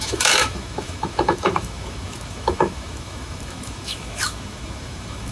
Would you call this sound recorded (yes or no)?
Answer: no